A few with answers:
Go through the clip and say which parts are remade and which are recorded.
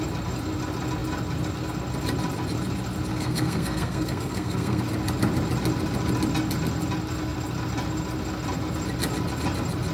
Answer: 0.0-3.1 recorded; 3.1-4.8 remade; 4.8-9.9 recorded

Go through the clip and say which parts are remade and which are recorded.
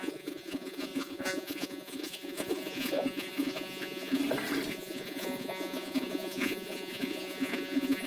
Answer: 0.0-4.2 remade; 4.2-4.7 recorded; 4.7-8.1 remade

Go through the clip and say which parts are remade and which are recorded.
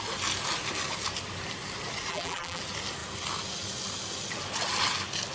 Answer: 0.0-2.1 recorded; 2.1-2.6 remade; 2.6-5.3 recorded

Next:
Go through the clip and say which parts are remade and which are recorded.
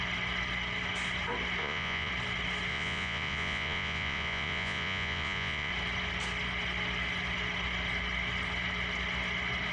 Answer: 0.0-1.6 recorded; 1.6-2.1 remade; 2.1-2.7 recorded; 2.7-5.7 remade; 5.7-9.7 recorded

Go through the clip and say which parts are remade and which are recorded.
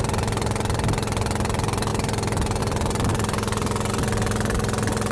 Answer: 0.0-5.1 recorded